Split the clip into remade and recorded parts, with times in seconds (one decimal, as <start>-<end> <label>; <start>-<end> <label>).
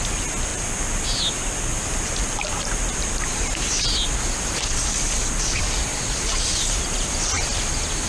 0.0-5.9 recorded; 5.9-7.3 remade; 7.3-8.1 recorded